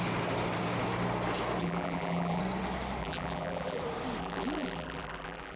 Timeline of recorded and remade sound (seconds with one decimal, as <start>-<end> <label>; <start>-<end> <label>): 0.0-1.6 recorded; 1.6-2.4 remade; 2.4-3.0 recorded; 3.0-3.8 remade; 3.8-4.2 recorded; 4.2-5.6 remade